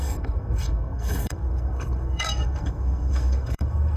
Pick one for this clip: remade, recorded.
remade